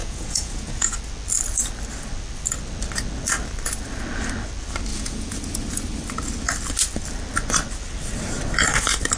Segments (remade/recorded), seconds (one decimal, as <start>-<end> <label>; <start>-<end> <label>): 0.0-0.9 remade; 0.9-4.9 recorded; 4.9-5.4 remade; 5.4-9.2 recorded